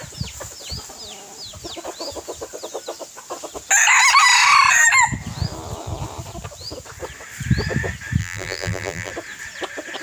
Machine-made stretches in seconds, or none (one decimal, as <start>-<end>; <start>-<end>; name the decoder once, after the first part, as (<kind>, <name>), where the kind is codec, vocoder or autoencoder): 8.2-9.1 (vocoder, BigVGAN v2)